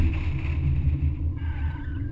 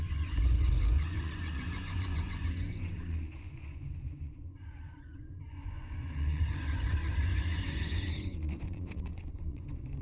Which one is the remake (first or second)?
second